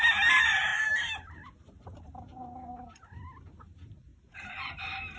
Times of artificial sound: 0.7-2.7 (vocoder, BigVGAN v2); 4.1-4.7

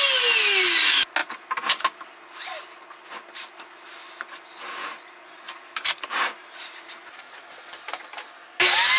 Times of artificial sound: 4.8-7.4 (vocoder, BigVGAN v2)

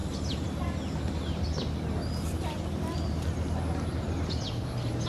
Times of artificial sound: none